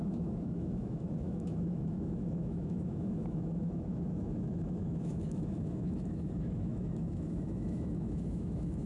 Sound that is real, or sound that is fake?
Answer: fake